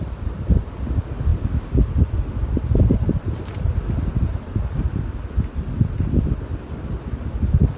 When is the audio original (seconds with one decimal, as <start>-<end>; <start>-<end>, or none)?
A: 0.0-7.8